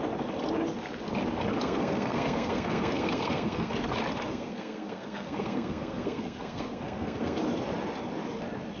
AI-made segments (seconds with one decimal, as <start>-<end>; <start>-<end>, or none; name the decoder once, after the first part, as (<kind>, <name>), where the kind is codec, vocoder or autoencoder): 1.6-3.7 (codec, SNAC); 4.3-7.4